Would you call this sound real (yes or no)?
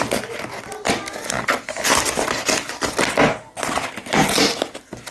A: yes